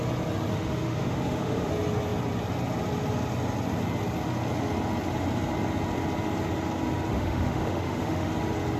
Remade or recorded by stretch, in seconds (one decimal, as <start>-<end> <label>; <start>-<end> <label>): 0.0-0.5 recorded; 0.5-1.7 remade; 1.7-7.1 recorded; 7.1-8.3 remade; 8.3-8.8 recorded